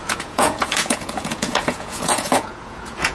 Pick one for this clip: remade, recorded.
remade